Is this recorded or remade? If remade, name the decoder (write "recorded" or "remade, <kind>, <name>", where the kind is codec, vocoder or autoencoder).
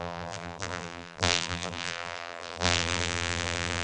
remade, vocoder, BigVGAN v2